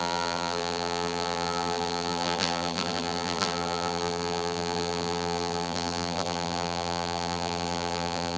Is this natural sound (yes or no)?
no